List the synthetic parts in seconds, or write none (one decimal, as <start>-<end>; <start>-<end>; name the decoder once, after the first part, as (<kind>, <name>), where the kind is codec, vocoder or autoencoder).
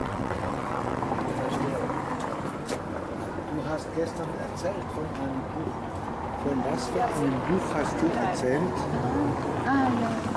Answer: 0.0-1.0 (vocoder, WaveNeXt)